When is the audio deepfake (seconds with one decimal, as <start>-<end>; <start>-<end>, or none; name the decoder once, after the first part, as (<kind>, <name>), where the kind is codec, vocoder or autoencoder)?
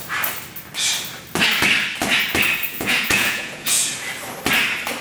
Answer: 2.7-3.9 (vocoder, Vocos)